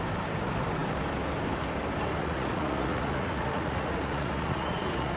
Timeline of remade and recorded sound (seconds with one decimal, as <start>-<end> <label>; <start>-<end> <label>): 0.0-2.2 recorded; 2.2-5.2 remade